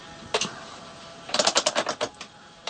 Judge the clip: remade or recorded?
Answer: recorded